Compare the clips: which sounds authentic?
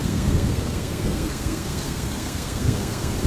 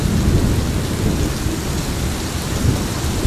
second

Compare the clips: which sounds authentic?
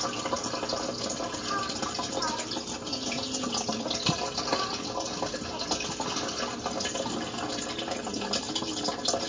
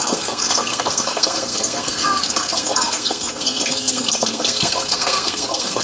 first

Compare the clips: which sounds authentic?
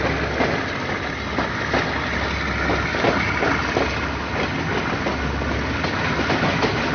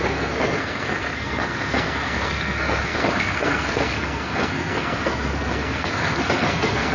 first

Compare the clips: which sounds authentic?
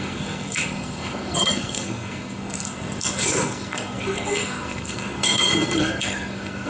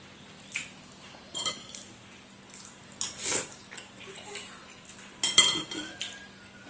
second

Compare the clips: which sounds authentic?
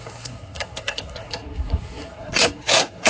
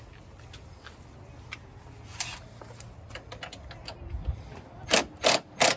second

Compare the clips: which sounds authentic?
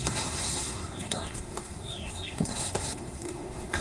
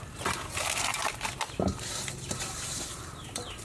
second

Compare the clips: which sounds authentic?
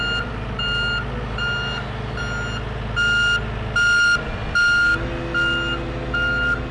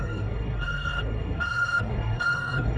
first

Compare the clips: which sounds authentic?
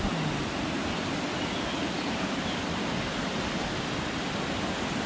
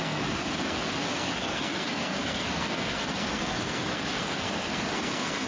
first